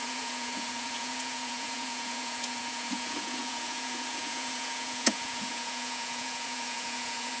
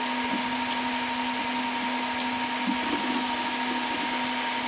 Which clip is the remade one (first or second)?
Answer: first